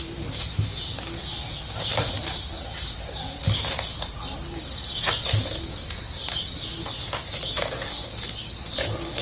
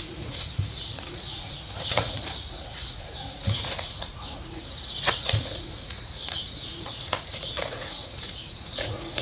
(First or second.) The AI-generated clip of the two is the second